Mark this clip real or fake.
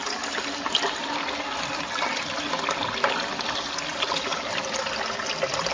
real